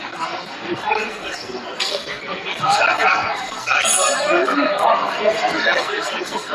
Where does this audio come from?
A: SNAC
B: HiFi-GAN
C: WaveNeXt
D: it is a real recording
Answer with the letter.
A